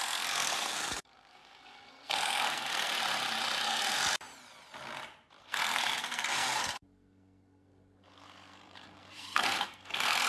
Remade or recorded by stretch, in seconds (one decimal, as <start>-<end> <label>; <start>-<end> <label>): 0.0-2.9 remade; 2.9-3.6 recorded; 3.6-4.0 remade; 4.0-5.4 recorded; 5.4-10.3 remade